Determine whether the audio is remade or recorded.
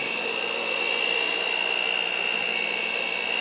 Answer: recorded